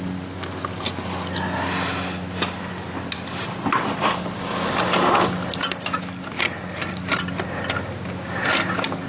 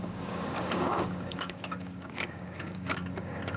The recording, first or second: first